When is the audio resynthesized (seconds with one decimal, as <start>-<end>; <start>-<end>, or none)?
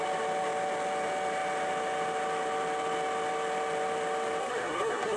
4.4-5.2